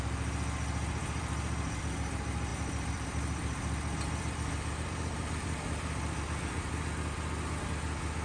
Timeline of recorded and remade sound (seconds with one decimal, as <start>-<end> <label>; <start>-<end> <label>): 0.0-1.0 recorded; 1.0-1.8 remade; 1.8-2.5 recorded; 2.5-6.6 remade; 6.6-8.2 recorded